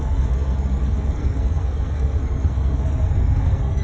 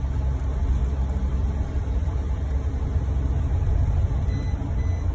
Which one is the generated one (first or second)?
first